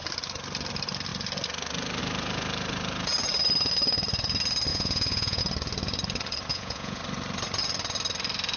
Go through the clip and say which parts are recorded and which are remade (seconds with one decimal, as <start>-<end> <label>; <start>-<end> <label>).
0.0-4.7 recorded; 4.7-5.4 remade; 5.4-6.5 recorded; 6.5-7.0 remade; 7.0-8.6 recorded